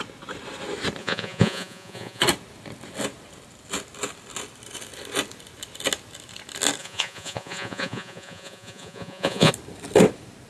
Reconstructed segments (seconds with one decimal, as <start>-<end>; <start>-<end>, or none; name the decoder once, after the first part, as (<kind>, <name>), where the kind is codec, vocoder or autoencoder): 1.0-2.2 (vocoder, Vocos); 6.8-9.5